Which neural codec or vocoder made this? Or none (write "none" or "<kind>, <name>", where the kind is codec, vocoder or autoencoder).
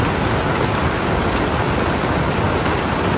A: none